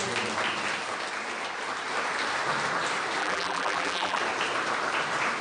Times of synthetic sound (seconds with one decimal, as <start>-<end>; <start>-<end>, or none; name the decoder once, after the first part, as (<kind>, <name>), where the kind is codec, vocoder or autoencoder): 3.2-4.2 (vocoder, BigVGAN v2)